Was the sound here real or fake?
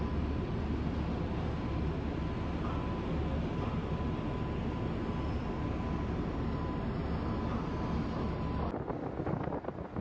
real